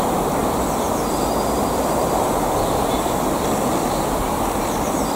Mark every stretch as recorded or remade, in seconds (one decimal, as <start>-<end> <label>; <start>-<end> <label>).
0.0-5.2 recorded